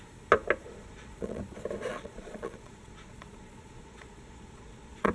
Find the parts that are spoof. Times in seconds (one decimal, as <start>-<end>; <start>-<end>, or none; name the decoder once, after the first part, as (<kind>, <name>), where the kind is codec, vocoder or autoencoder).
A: 0.6-1.4 (vocoder, Vocos); 1.9-5.1

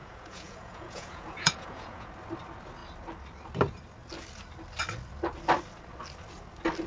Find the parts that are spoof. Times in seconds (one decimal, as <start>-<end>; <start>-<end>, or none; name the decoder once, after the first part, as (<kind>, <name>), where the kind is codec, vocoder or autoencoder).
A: 0.0-2.1 (vocoder, Vocos)

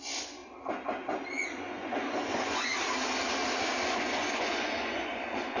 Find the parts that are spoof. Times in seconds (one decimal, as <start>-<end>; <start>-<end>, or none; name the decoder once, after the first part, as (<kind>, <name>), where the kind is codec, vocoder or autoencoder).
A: 0.0-0.4 (vocoder, Vocos); 1.6-2.7; 3.8-5.6

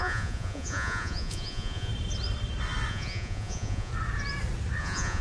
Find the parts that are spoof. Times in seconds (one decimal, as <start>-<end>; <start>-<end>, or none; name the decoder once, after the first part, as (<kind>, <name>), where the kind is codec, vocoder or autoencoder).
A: 0.0-1.9 (vocoder, Vocos); 2.9-3.9; 4.8-5.2

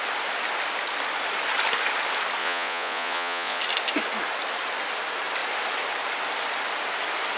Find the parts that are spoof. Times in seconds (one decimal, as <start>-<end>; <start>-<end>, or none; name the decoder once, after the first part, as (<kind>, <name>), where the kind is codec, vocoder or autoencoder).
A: 2.4-3.6 (vocoder, Vocos)